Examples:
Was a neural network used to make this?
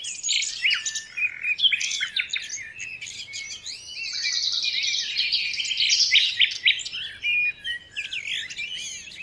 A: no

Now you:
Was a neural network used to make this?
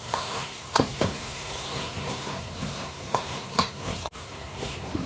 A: yes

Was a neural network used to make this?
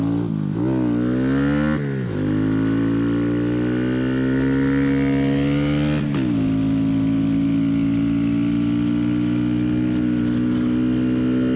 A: no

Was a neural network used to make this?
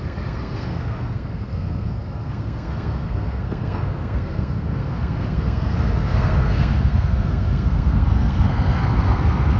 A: yes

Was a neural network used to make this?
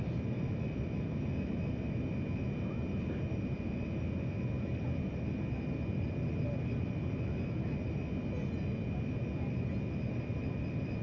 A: no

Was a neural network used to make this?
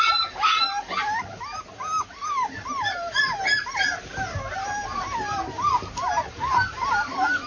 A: no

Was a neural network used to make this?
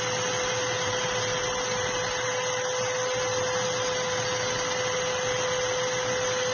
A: no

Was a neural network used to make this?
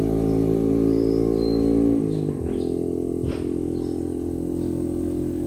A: no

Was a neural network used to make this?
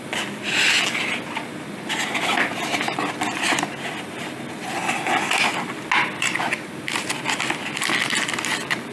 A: no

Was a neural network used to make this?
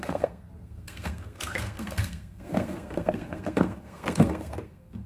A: yes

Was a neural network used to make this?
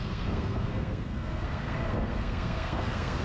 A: yes